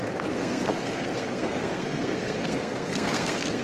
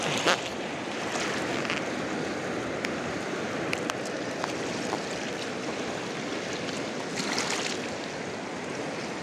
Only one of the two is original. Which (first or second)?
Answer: second